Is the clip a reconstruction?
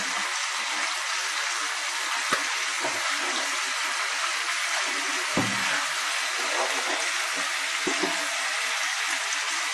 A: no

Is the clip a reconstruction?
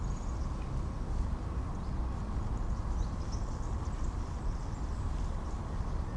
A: no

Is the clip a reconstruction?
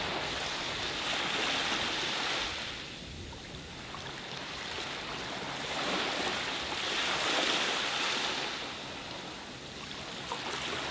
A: no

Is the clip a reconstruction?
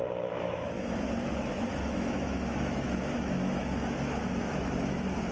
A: yes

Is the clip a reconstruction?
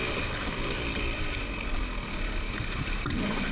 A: no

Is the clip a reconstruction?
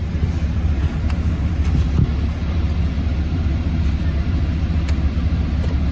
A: no